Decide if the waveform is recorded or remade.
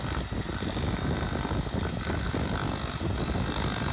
recorded